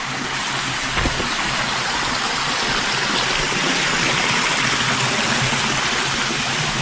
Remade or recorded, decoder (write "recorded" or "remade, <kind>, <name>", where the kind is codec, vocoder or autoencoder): recorded